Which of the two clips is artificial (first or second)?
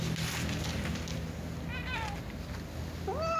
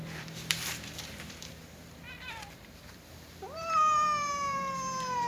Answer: second